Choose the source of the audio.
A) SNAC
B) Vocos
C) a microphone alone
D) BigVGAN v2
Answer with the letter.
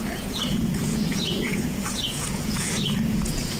B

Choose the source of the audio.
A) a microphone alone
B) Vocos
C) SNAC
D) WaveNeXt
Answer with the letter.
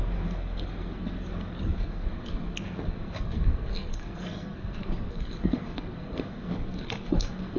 C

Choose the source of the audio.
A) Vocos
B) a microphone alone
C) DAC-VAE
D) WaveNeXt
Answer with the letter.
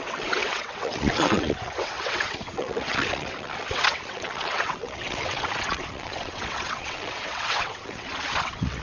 D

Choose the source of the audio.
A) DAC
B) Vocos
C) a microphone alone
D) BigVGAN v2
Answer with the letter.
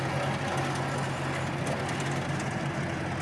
C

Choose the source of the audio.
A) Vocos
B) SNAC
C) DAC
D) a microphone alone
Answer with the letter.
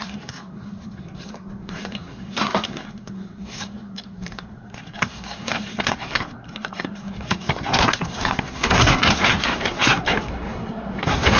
B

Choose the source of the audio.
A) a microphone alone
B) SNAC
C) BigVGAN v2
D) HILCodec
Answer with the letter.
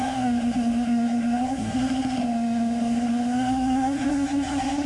B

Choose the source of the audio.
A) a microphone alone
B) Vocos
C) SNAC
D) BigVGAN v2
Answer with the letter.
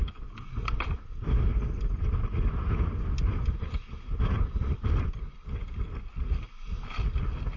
A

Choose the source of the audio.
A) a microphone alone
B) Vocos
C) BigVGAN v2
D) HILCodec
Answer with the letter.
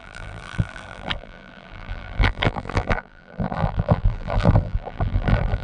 C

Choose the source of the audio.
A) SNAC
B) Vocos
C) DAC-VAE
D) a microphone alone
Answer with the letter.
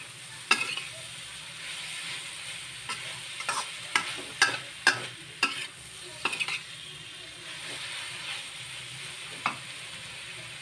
D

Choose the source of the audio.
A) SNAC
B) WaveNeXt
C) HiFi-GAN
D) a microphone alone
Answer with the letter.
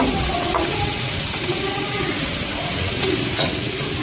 B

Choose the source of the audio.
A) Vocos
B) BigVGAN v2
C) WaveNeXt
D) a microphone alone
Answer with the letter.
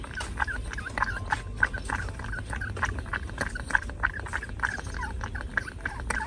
D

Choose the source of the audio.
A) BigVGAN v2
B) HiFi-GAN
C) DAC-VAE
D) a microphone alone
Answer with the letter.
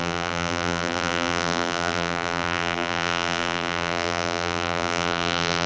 A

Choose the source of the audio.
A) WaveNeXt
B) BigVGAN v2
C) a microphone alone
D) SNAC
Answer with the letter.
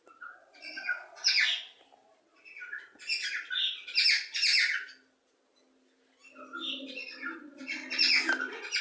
C